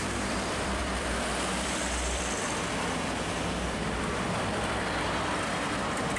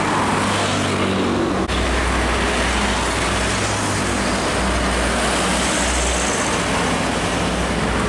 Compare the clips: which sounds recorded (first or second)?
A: second